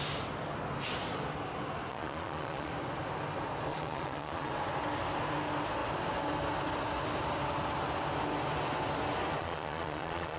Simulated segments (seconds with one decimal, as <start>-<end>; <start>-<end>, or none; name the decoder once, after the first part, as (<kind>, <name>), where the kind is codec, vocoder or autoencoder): 1.9-2.7 (vocoder, Vocos); 3.7-4.5; 9.4-10.4